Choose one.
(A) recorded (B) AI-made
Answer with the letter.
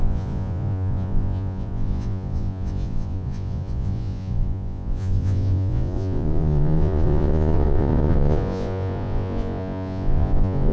B